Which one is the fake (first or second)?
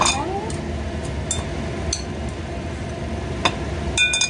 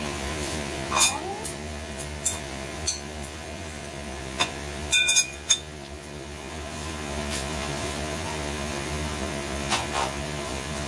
second